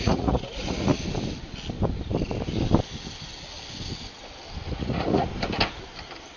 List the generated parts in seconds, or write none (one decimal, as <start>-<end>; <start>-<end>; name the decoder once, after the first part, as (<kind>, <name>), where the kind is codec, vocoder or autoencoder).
0.0-0.9 (vocoder, Vocos); 4.7-5.3